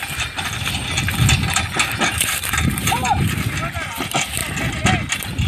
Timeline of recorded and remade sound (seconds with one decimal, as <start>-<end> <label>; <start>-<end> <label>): 0.0-2.1 recorded; 2.1-3.2 remade; 3.2-5.5 recorded